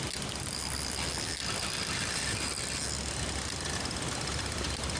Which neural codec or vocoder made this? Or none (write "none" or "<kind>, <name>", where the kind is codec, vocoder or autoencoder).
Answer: none